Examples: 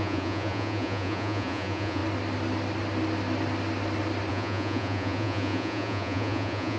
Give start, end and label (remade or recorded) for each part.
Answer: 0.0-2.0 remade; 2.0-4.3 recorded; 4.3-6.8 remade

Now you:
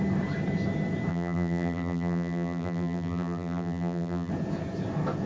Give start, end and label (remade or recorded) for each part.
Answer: 0.0-1.1 recorded; 1.1-4.3 remade; 4.3-5.3 recorded

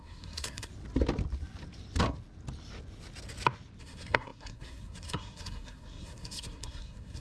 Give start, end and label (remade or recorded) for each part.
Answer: 0.0-0.7 remade; 0.7-3.8 recorded; 3.8-7.2 remade

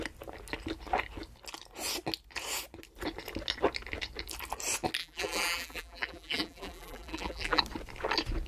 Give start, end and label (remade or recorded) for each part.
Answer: 0.0-5.0 recorded; 5.0-7.6 remade; 7.6-8.5 recorded

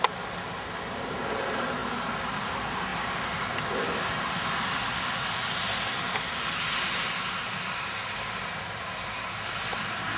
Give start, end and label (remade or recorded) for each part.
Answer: 0.0-10.2 recorded

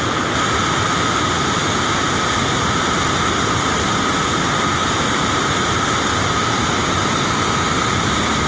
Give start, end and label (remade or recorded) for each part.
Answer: 0.0-8.5 recorded

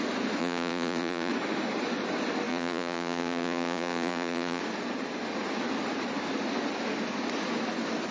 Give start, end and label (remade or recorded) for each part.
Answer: 0.0-0.4 recorded; 0.4-1.3 remade; 1.3-2.5 recorded; 2.5-4.6 remade; 4.6-8.1 recorded

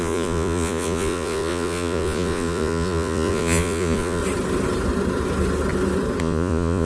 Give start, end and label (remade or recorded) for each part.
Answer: 0.0-4.2 remade; 4.2-6.2 recorded; 6.2-6.9 remade